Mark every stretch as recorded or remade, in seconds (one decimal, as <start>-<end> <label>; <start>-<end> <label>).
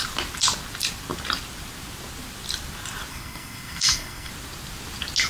0.0-3.1 recorded; 3.1-4.3 remade; 4.3-5.3 recorded